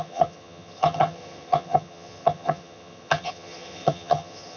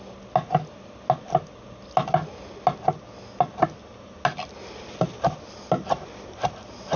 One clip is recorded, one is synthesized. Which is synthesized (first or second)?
first